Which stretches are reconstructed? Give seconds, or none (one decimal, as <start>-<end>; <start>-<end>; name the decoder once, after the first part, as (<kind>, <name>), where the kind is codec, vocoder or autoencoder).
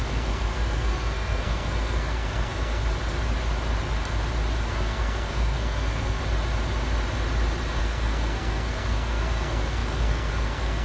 0.0-2.8 (codec, SNAC); 4.7-6.2; 7.8-10.8